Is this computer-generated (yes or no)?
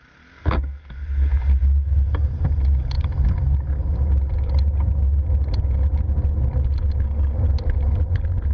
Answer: no